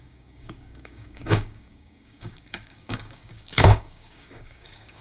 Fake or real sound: fake